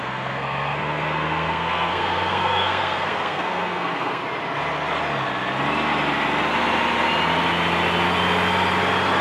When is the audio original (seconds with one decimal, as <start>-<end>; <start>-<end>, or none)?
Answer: 4.2-9.2

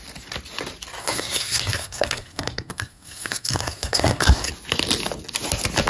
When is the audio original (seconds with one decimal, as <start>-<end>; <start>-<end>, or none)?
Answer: 0.0-1.0; 4.5-5.9

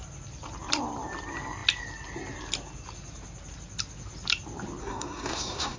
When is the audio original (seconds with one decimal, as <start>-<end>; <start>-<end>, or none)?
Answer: 0.0-4.8

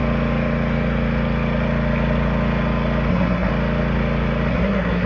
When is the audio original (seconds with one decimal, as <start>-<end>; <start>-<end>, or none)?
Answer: 0.0-3.1; 3.5-4.5